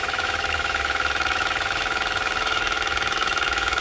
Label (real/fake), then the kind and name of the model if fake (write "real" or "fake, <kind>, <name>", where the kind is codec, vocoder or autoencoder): fake, autoencoder, DAC-VAE